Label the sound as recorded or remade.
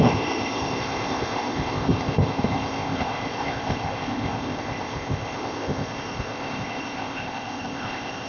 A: remade